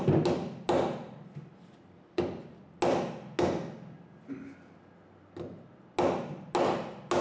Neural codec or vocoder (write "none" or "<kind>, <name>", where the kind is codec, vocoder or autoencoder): none